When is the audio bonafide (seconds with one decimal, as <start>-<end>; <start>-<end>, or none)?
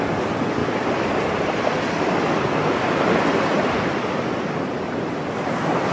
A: 0.0-5.9